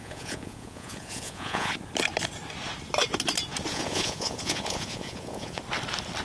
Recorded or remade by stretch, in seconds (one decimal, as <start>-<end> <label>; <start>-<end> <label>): 0.0-1.7 remade; 1.7-3.7 recorded; 3.7-5.6 remade; 5.6-6.2 recorded